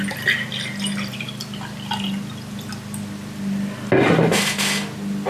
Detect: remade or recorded recorded